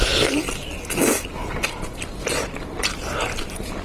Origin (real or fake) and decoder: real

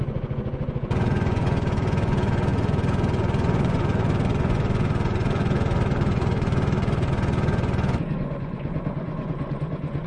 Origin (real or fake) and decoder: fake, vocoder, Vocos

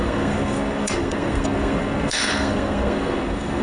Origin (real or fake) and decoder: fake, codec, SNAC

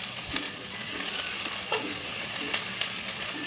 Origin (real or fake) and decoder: fake, vocoder, Vocos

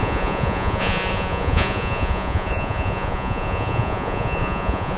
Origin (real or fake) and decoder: fake, vocoder, Vocos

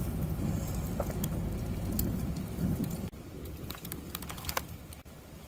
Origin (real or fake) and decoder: real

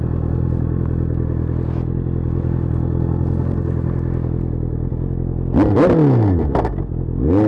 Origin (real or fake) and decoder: real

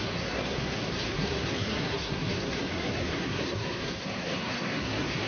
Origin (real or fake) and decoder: fake, codec, SNAC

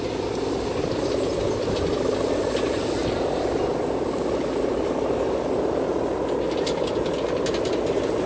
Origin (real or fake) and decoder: real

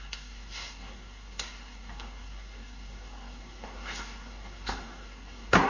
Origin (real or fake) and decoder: fake, codec, SNAC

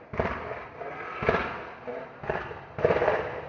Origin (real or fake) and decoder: real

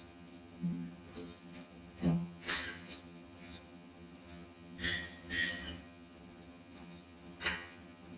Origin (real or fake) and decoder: fake, vocoder, HiFi-GAN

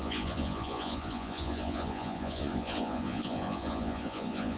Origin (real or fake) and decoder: fake, vocoder, Vocos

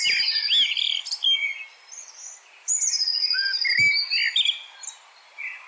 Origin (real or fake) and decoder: real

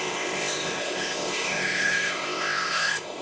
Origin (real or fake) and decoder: fake, codec, ZipCodec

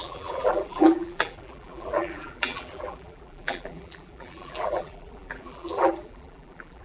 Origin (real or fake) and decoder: fake, vocoder, BigVGAN v2